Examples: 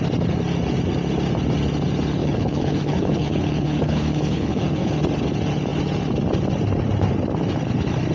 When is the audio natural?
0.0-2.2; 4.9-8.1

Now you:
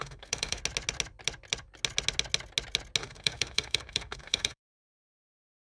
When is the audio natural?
0.6-3.0; 4.6-5.7

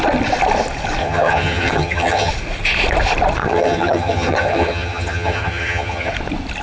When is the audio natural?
0.0-1.0; 2.3-3.4; 6.1-6.6

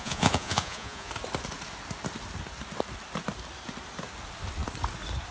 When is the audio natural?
1.1-5.3

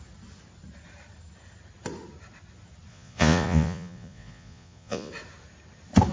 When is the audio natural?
0.0-2.9; 5.1-6.1

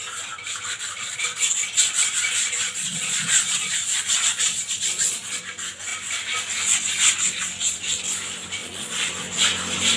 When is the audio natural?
0.0-2.4; 5.4-8.6; 9.1-10.0

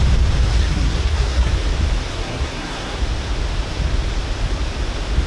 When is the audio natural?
0.0-0.5; 1.5-2.1; 3.0-5.3